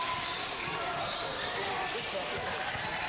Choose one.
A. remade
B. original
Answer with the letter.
B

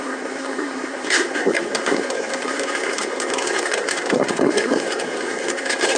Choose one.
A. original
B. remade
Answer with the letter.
B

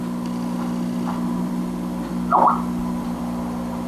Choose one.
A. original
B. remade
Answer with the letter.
A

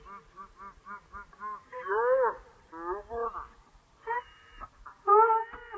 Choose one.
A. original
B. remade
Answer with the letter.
A